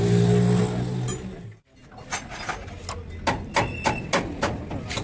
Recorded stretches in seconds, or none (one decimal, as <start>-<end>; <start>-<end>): 0.0-5.0